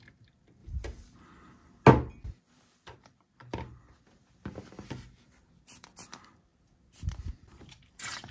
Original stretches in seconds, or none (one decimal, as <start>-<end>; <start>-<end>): 0.6-1.9; 6.5-7.3